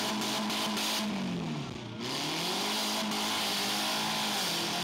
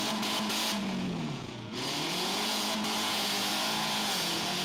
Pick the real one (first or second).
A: first